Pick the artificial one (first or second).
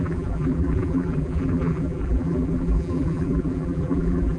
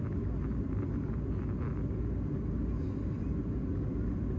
first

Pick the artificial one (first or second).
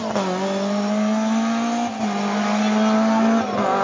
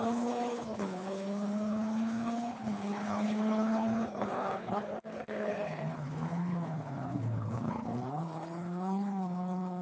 second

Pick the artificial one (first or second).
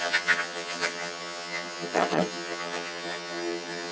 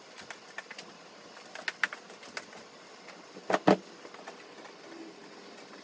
first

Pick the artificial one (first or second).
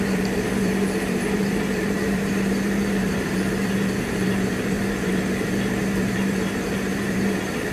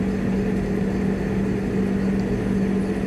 first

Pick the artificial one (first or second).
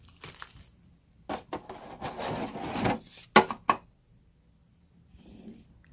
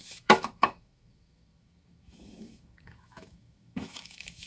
second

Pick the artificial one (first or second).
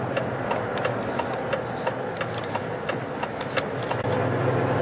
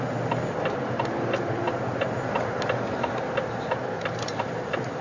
second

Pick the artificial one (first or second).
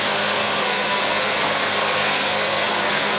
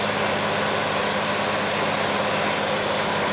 first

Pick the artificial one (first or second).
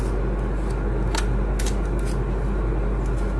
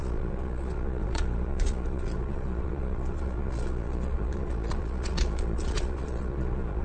second